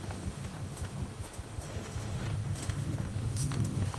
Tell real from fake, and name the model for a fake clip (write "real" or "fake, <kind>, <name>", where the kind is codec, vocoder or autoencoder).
fake, autoencoder, DAC-VAE